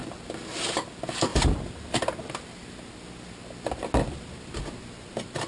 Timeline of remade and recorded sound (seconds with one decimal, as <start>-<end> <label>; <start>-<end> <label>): 0.0-5.5 recorded